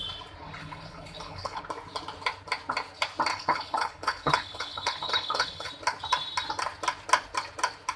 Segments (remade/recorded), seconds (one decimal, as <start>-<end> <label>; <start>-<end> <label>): 0.0-0.6 recorded; 0.6-1.6 remade; 1.6-3.3 recorded; 3.3-5.7 remade; 5.7-8.0 recorded